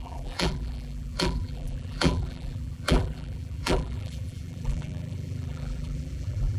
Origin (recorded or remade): remade